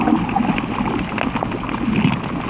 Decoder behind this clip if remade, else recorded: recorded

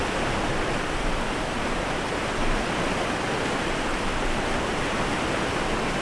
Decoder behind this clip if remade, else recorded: recorded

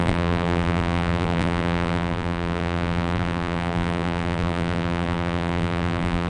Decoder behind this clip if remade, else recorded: remade, vocoder, BigVGAN v2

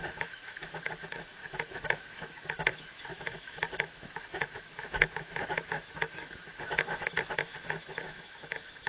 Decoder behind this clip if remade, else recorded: remade, autoencoder, DAC-VAE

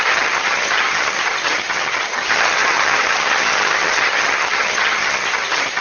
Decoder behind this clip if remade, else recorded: remade, vocoder, HiFi-GAN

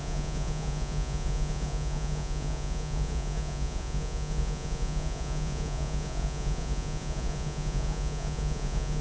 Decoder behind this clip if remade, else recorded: remade, vocoder, Vocos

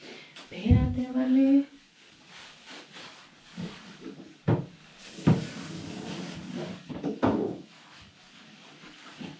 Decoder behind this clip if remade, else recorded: remade, codec, DAC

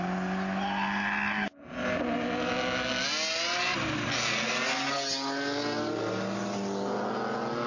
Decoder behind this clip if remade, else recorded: recorded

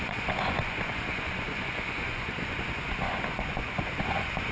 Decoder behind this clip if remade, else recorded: remade, vocoder, Vocos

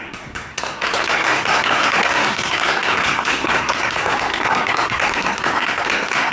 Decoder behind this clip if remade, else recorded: remade, codec, SNAC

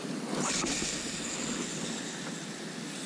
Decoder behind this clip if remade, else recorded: recorded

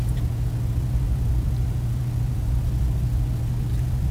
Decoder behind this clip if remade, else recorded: recorded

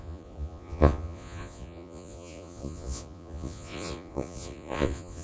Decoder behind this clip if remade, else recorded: remade, vocoder, Vocos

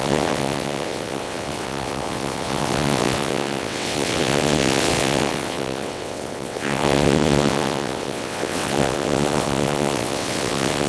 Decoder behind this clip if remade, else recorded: remade, vocoder, WaveNeXt